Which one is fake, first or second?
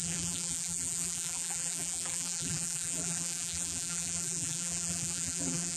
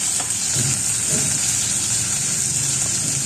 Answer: first